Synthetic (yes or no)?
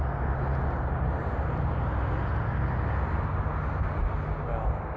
no